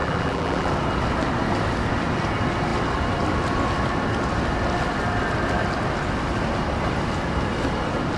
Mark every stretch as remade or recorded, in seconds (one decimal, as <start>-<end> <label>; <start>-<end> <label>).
0.0-0.7 remade; 0.7-8.2 recorded